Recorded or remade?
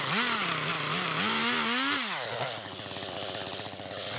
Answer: recorded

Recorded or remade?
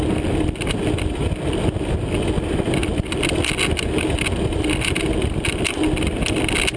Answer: recorded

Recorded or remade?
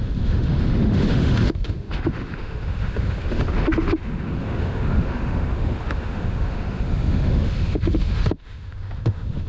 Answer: remade